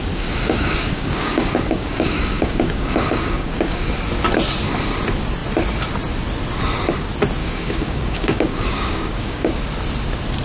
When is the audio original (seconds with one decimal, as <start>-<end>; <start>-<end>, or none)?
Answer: 3.9-7.4; 9.6-10.4